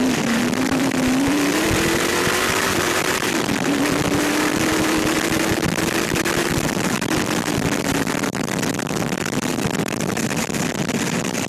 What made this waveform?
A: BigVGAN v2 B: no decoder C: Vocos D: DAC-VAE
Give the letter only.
A